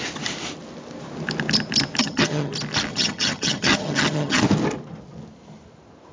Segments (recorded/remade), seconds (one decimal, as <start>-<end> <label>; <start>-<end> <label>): 0.0-2.0 recorded; 2.0-2.5 remade; 2.5-2.9 recorded; 2.9-4.4 remade; 4.4-6.1 recorded